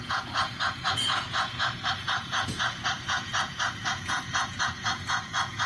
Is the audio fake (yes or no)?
yes